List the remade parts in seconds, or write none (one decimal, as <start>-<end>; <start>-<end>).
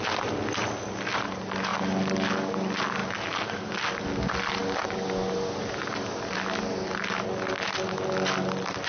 none